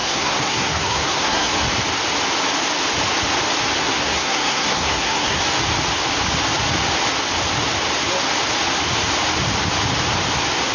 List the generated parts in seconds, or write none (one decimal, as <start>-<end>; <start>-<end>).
0.0-1.5; 3.8-5.4